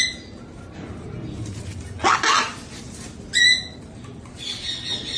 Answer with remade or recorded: recorded